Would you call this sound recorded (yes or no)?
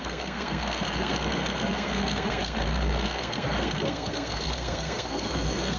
no